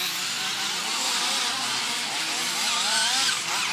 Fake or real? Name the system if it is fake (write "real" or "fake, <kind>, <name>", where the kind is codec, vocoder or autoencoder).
fake, vocoder, BigVGAN v2